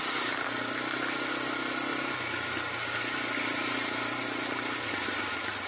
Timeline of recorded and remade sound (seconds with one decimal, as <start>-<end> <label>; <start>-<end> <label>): 0.0-5.7 recorded